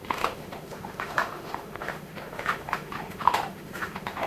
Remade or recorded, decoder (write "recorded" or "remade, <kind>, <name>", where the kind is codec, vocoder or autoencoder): remade, autoencoder, DAC-VAE